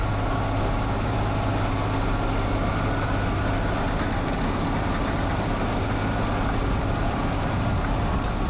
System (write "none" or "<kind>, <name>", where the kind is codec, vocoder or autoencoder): none